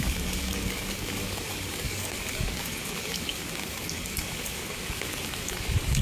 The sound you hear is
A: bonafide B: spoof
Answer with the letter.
B